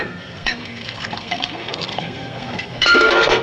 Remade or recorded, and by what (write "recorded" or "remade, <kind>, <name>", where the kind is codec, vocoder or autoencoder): remade, codec, SNAC